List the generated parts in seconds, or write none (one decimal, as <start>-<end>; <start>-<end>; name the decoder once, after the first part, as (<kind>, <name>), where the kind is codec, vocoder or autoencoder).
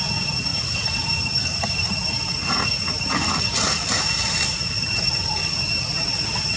0.5-3.4 (vocoder, BigVGAN v2)